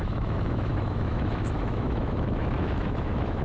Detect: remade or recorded remade